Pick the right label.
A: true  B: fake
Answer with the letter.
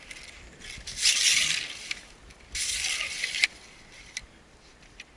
A